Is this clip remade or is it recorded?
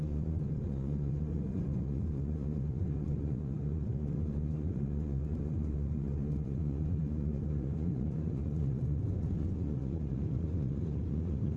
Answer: remade